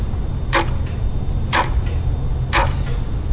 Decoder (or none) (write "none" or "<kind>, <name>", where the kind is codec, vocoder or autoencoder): none